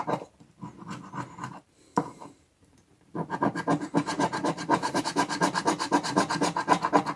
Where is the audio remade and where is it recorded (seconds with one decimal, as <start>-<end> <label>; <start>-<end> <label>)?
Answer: 0.0-1.9 recorded; 1.9-5.0 remade; 5.0-7.2 recorded